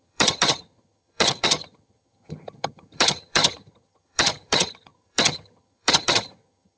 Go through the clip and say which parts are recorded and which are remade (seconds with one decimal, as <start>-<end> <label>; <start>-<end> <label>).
0.0-6.8 remade